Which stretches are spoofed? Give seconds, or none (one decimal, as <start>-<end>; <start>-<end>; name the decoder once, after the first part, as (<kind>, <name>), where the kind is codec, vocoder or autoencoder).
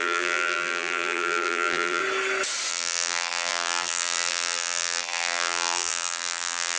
0.0-2.0 (vocoder, BigVGAN v2); 2.7-6.8